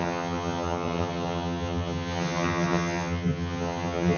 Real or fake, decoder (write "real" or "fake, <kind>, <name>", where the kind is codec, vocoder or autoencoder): fake, vocoder, HiFi-GAN